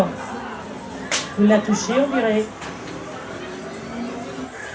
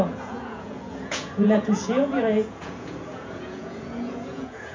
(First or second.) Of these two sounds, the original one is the first